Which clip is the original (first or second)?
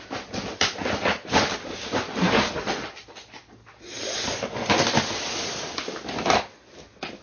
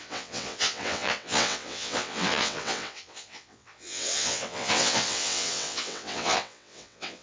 first